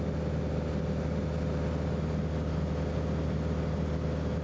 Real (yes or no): yes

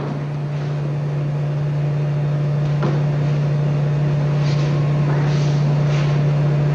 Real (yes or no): yes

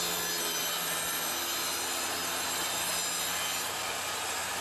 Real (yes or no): yes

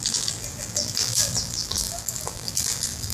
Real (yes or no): no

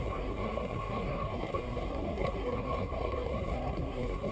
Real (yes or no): no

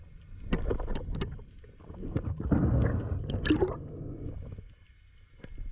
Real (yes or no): yes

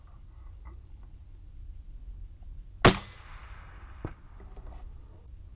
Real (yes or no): yes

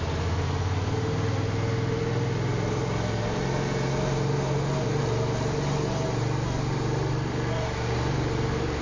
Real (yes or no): yes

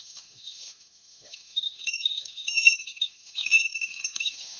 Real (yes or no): no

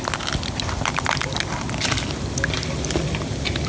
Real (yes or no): yes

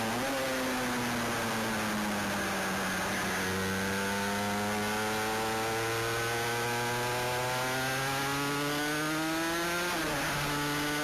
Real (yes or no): yes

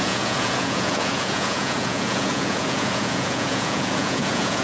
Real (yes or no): no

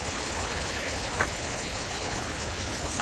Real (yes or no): no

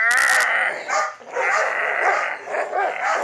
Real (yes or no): yes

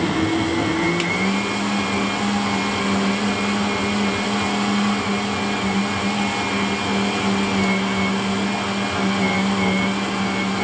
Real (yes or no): yes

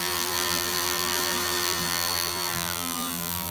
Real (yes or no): no